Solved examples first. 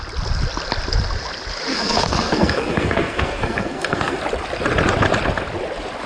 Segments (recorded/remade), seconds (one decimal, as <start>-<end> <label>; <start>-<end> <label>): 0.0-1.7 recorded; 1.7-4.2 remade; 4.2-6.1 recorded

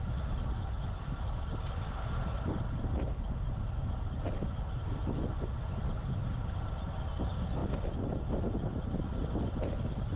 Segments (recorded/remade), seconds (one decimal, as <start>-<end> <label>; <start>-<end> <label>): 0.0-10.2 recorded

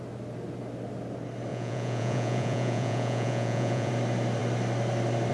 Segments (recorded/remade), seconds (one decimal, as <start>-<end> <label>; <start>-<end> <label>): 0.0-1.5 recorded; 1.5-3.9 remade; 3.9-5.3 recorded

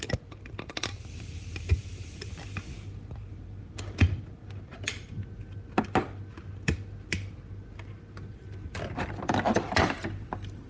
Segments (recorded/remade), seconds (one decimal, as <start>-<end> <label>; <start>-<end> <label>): 0.0-0.9 recorded; 0.9-2.3 remade; 2.3-10.7 recorded